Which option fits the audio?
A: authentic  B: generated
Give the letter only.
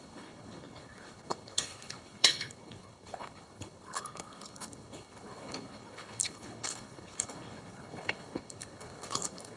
B